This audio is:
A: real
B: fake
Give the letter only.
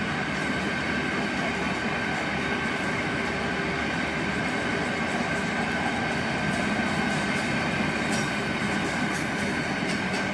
A